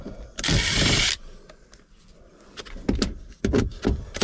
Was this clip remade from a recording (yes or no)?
yes